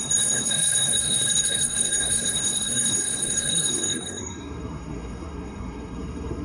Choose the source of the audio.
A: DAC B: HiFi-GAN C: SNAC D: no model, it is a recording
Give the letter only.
C